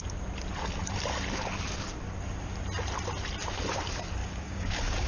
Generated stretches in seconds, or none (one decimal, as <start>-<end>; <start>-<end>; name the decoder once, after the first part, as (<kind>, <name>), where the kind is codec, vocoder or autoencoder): 4.2-5.1 (codec, DAC)